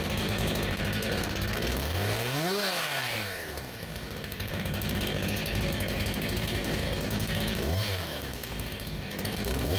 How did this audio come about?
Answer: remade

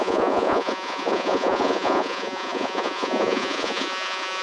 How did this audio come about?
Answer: remade